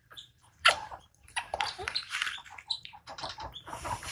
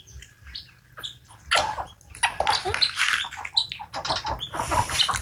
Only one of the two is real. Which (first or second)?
second